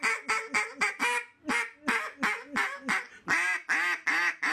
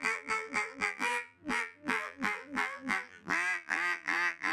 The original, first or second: first